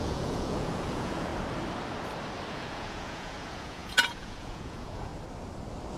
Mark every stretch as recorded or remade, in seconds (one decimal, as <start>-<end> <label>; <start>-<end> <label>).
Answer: 0.0-1.3 remade; 1.3-2.5 recorded; 2.5-5.1 remade; 5.1-6.0 recorded

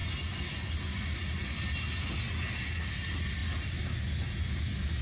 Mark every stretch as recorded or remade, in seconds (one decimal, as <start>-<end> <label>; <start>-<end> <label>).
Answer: 0.0-3.4 recorded; 3.4-4.6 remade; 4.6-5.0 recorded

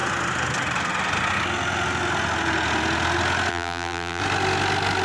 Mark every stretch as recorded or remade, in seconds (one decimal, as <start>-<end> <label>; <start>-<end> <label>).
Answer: 0.0-3.5 recorded; 3.5-4.2 remade; 4.2-5.0 recorded

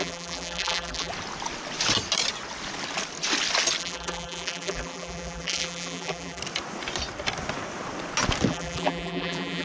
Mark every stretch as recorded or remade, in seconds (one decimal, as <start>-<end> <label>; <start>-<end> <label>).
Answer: 0.0-1.1 remade; 1.1-3.8 recorded; 3.8-6.4 remade; 6.4-8.5 recorded; 8.5-9.6 remade

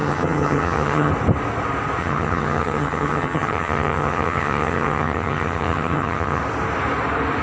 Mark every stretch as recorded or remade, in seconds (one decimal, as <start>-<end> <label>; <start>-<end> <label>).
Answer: 0.0-1.1 remade; 1.1-2.0 recorded; 2.0-6.4 remade; 6.4-7.4 recorded

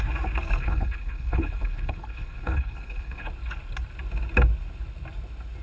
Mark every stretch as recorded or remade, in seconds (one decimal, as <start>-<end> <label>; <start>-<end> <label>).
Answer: 0.0-0.6 recorded; 0.6-3.3 remade; 3.3-5.6 recorded

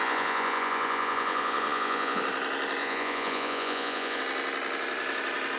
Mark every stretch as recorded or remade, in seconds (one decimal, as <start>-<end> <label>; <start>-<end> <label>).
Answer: 0.0-2.2 remade; 2.2-2.8 recorded; 2.8-4.2 remade; 4.2-5.6 recorded